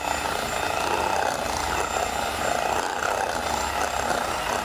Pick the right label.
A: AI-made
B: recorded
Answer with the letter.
B